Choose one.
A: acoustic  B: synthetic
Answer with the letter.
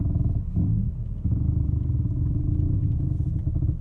A